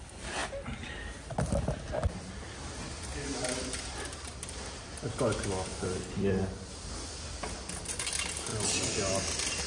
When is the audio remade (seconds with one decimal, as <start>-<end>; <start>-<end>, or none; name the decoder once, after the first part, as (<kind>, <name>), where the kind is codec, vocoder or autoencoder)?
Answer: 5.7-6.3 (vocoder, BigVGAN v2)